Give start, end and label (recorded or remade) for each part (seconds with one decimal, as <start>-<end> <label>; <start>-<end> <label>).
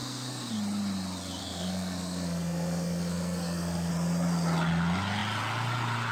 0.0-0.5 remade; 0.5-1.4 recorded; 1.4-3.9 remade; 3.9-6.1 recorded